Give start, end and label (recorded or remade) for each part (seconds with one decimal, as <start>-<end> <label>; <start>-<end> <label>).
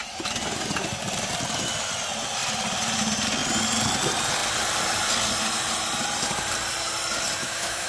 0.0-7.4 recorded; 7.4-7.9 remade